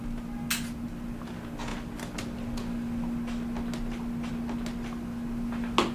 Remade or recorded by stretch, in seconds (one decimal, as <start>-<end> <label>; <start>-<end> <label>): 0.0-5.9 recorded